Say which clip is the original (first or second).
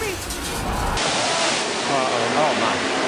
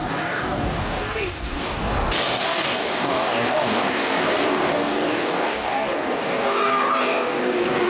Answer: first